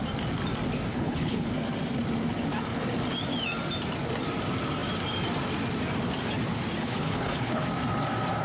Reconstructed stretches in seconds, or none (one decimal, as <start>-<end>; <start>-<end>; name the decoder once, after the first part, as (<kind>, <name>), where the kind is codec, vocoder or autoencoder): 0.9-1.5 (codec, HILCodec); 6.8-7.6